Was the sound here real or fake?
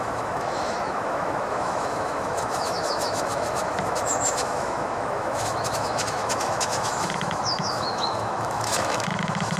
fake